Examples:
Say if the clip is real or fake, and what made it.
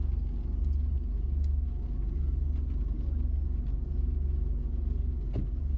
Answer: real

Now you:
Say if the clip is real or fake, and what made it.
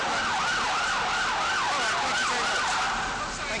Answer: real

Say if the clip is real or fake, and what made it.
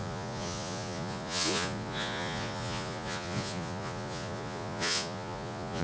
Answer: fake, vocoder, Vocos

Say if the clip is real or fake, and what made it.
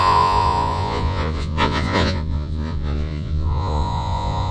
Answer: fake, vocoder, Vocos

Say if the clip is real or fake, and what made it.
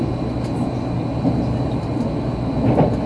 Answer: real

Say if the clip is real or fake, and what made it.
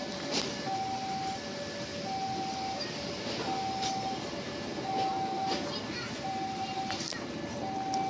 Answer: real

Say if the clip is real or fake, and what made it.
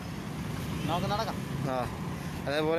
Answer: real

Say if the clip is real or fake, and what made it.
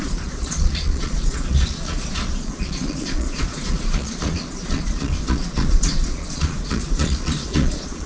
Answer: fake, vocoder, Vocos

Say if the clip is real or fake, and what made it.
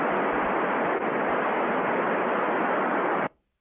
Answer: real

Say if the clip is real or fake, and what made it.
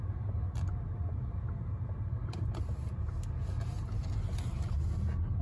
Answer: real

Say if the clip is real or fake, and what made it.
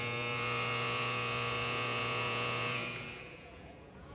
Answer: fake, vocoder, Vocos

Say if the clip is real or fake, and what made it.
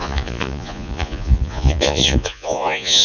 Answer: fake, vocoder, Vocos